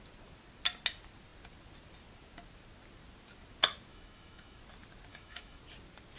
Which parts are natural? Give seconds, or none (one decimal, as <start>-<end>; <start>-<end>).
0.0-3.9; 4.6-5.1; 5.6-6.2